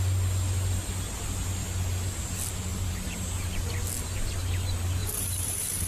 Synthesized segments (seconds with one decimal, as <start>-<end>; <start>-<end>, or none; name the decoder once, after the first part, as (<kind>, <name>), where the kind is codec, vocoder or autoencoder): 2.7-3.7 (vocoder, BigVGAN v2); 5.0-5.9